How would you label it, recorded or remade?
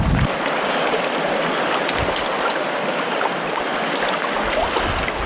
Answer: recorded